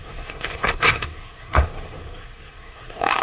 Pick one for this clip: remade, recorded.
remade